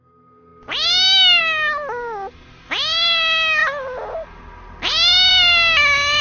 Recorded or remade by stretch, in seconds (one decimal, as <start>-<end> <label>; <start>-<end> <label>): 0.0-6.2 recorded

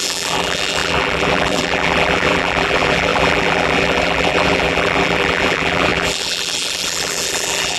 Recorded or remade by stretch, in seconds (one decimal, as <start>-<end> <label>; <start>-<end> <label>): 0.0-7.8 remade

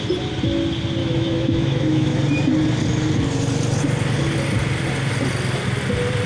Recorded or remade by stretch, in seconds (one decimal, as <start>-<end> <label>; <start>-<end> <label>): 0.0-1.0 recorded; 1.0-2.2 remade; 2.2-6.3 recorded

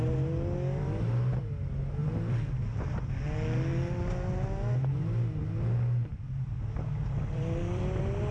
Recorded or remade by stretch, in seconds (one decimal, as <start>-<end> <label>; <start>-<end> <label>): 0.0-2.0 recorded; 2.0-3.2 remade; 3.2-6.1 recorded; 6.1-7.8 remade; 7.8-8.3 recorded